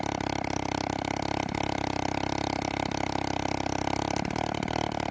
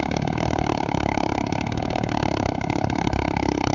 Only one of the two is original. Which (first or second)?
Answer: first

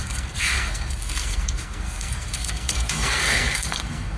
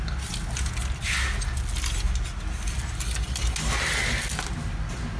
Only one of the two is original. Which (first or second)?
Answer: second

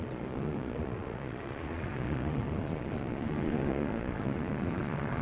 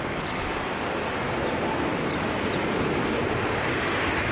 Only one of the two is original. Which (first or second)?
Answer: second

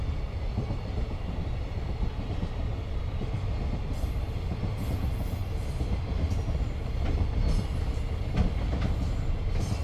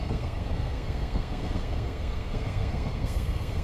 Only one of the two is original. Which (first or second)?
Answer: first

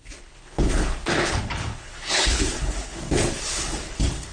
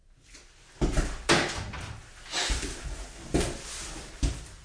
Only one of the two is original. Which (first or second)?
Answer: second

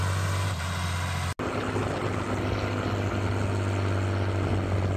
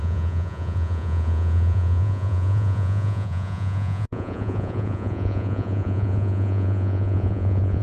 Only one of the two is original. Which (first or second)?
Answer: first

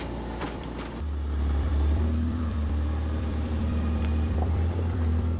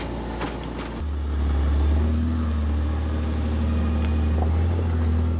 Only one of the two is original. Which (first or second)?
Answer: second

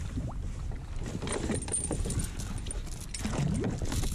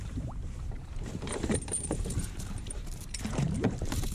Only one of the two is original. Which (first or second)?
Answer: first